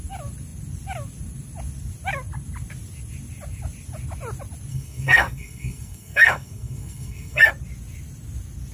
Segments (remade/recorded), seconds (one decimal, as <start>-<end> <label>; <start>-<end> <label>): 0.0-4.7 recorded; 4.7-7.5 remade; 7.5-8.7 recorded